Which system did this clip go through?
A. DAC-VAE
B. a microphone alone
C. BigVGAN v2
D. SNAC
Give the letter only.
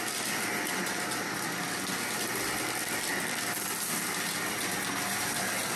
B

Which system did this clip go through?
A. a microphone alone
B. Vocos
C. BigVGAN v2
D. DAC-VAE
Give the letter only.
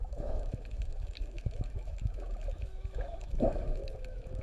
D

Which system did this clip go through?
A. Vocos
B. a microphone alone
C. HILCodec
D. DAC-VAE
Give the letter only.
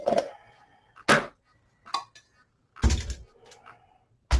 B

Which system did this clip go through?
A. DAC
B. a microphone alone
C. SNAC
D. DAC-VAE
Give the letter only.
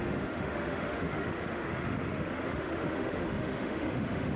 D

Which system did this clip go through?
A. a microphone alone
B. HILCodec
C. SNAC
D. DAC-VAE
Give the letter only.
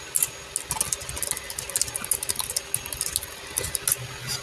A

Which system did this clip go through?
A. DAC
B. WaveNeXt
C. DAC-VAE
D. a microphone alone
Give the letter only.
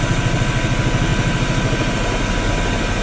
D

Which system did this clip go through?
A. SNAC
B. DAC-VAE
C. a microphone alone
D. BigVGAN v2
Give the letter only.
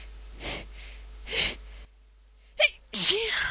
C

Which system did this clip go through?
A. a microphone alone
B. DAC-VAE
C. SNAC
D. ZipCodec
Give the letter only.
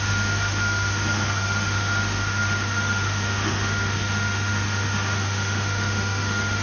B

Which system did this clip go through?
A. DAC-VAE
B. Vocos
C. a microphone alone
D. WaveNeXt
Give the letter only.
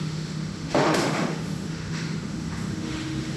A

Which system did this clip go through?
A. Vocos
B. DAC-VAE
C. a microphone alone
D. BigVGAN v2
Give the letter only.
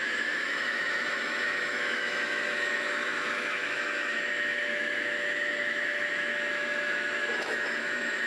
B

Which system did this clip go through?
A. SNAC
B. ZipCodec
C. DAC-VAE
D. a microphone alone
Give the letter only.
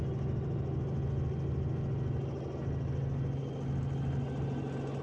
D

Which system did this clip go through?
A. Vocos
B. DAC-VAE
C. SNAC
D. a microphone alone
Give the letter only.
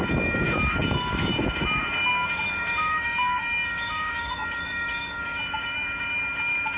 B